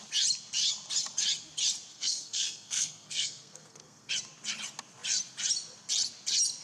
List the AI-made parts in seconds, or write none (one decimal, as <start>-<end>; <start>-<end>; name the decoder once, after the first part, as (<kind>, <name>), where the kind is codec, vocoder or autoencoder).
1.9-4.1 (codec, SNAC)